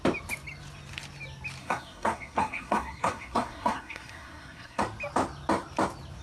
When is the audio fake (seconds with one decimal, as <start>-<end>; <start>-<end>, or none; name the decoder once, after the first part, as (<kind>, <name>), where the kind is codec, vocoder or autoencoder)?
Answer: 1.6-4.8 (codec, SNAC)